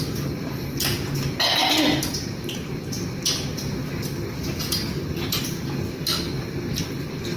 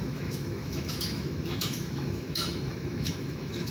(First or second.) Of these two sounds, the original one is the first